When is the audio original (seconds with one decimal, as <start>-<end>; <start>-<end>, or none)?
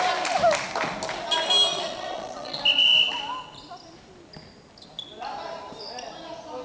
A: 0.0-1.7; 2.6-6.6